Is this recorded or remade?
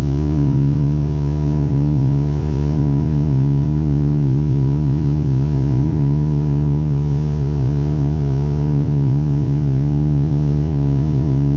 remade